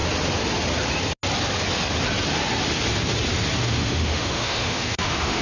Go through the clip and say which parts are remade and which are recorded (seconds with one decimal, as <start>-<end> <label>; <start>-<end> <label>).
0.0-3.6 recorded; 3.6-5.4 remade